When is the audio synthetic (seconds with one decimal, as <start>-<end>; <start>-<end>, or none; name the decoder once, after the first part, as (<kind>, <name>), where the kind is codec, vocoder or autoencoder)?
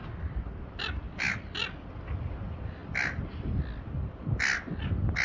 none